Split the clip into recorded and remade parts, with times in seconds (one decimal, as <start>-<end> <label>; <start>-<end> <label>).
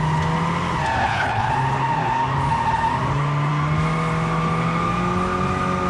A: 0.0-1.0 recorded; 1.0-1.5 remade; 1.5-5.9 recorded